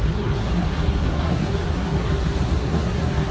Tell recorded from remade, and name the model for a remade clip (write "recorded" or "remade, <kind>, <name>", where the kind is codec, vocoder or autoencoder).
remade, codec, SNAC